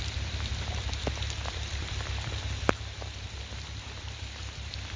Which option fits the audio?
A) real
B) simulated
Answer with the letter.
B